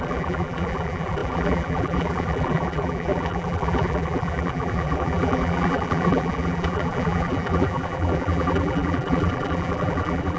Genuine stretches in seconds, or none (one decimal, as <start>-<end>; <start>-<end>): none